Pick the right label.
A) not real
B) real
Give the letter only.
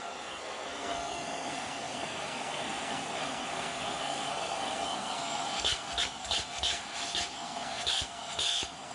A